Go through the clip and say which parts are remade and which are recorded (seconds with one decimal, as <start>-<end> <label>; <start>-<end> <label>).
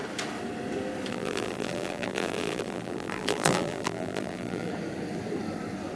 0.0-1.1 recorded; 1.1-4.7 remade; 4.7-6.0 recorded